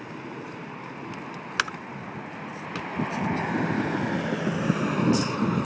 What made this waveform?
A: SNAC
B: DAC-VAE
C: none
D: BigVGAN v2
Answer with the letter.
C